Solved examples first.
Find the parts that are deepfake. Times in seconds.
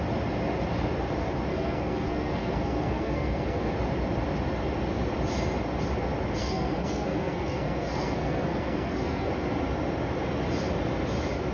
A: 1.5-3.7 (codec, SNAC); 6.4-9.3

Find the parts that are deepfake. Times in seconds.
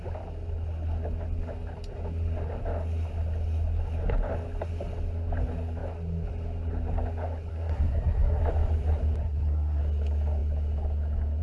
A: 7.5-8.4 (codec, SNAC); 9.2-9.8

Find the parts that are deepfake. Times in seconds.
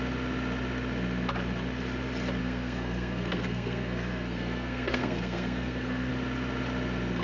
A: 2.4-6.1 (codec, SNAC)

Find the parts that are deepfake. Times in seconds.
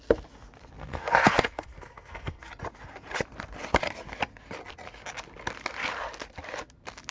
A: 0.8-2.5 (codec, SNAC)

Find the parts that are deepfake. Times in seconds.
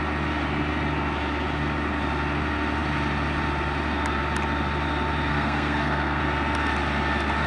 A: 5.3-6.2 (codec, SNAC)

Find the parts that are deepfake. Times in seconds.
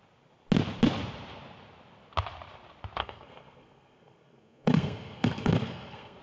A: 3.0-6.2 (codec, SNAC)